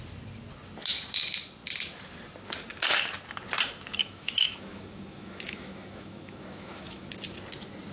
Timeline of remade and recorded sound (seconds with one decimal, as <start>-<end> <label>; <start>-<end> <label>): 0.0-4.0 recorded; 4.0-7.1 remade; 7.1-7.9 recorded